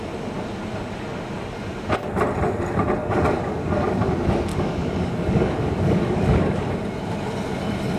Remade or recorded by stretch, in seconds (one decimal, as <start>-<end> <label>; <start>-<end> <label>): 0.0-3.0 recorded; 3.0-4.1 remade; 4.1-4.5 recorded; 4.5-6.6 remade; 6.6-8.0 recorded